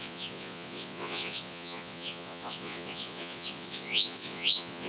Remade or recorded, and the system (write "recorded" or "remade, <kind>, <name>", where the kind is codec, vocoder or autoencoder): remade, vocoder, Vocos